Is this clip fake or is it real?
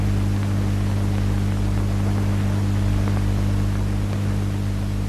real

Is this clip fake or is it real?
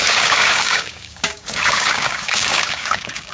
fake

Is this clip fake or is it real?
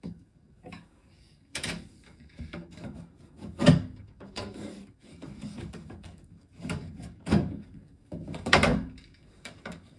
fake